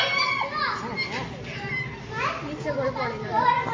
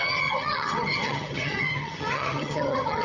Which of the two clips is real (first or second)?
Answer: first